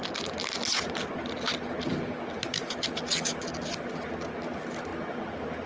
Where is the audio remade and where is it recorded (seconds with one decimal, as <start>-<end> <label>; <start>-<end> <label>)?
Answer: 0.0-5.7 recorded